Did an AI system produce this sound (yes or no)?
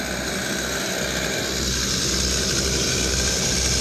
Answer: no